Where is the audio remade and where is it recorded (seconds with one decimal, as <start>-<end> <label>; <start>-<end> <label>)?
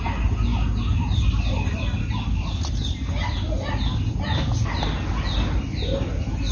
0.0-6.5 recorded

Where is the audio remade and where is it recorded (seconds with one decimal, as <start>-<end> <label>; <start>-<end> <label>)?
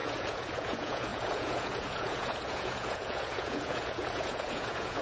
0.0-5.0 remade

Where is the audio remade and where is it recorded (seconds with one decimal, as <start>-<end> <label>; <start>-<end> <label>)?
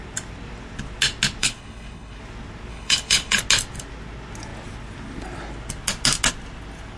0.0-1.4 recorded; 1.4-2.2 remade; 2.2-2.7 recorded; 2.7-3.4 remade; 3.4-7.0 recorded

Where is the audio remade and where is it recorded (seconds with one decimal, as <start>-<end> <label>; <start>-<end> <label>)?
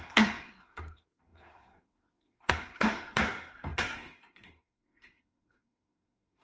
0.0-6.4 remade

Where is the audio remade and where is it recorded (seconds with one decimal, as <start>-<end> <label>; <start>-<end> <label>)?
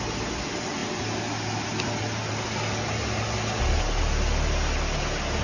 0.0-5.4 recorded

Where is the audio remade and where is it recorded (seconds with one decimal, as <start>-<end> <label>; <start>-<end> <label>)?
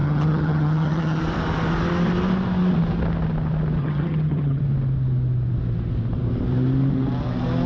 0.0-1.2 remade; 1.2-3.8 recorded; 3.8-4.6 remade; 4.6-7.7 recorded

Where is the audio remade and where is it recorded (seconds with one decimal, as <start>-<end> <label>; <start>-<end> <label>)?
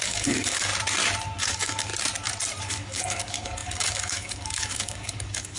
0.0-0.7 remade; 0.7-1.4 recorded; 1.4-1.9 remade; 1.9-2.6 recorded; 2.6-5.6 remade